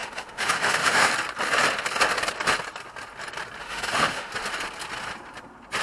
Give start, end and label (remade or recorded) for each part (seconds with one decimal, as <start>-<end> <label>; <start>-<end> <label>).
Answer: 0.0-1.1 remade; 1.1-3.6 recorded; 3.6-4.3 remade; 4.3-5.8 recorded